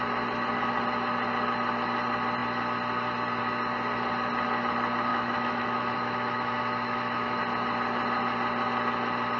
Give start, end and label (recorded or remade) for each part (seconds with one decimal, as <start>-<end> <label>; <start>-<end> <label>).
0.0-5.1 recorded; 5.1-7.4 remade; 7.4-9.4 recorded